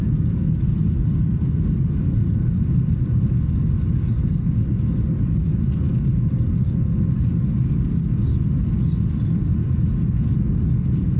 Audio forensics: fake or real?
real